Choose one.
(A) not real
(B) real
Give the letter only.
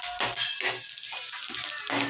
B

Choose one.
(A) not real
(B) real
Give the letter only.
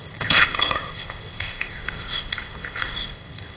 A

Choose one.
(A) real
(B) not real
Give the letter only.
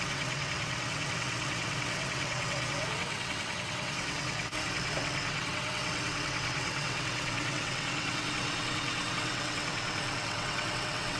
B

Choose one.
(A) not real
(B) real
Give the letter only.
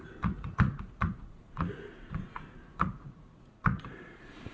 A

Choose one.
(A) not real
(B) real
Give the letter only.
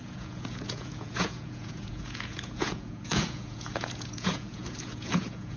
A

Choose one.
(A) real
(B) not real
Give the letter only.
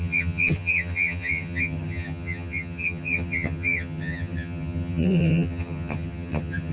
B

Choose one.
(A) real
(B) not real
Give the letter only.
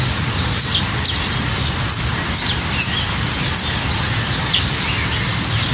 A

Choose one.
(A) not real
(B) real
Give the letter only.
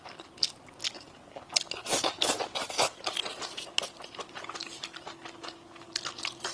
B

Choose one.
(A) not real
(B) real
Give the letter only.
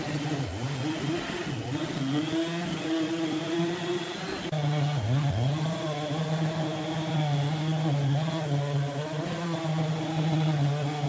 B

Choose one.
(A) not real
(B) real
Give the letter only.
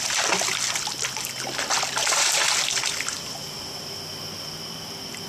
B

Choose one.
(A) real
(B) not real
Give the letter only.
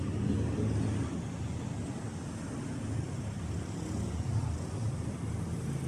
A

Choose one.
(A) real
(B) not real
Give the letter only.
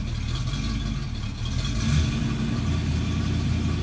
A